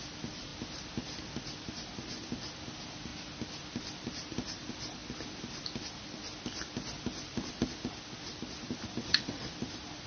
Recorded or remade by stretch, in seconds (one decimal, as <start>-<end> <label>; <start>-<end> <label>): 0.0-9.0 recorded; 9.0-9.5 remade; 9.5-10.1 recorded